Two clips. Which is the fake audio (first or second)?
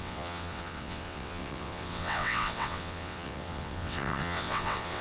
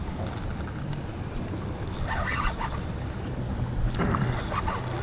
first